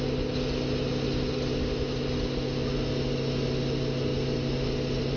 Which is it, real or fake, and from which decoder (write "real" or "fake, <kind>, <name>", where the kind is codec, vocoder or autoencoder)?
real